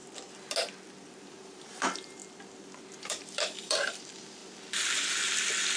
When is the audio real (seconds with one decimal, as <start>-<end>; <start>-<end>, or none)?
0.0-1.3; 2.2-3.0; 4.4-5.8